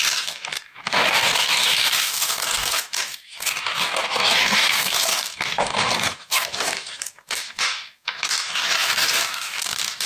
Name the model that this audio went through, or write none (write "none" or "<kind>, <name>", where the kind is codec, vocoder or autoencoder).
codec, DAC